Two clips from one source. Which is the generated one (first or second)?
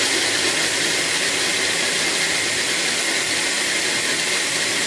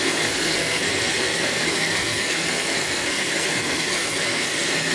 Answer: second